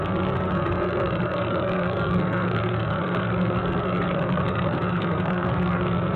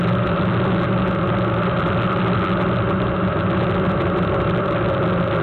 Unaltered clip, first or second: second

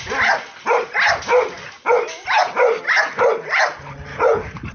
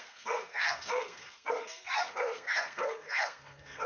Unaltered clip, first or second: first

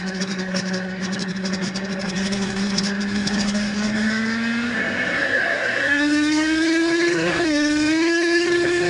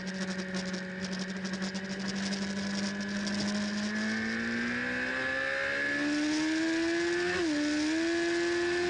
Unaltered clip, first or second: second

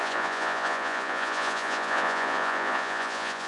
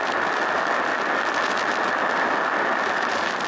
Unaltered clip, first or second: second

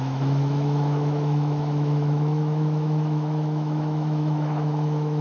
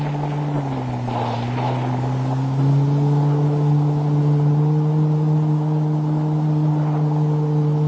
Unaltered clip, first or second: second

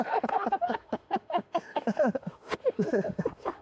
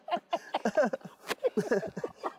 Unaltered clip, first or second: second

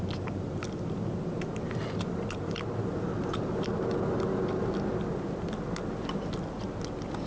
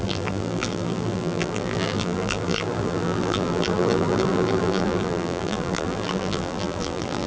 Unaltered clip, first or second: first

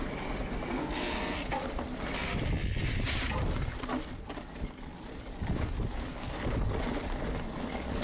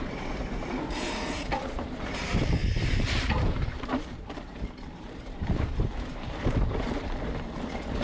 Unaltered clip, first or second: first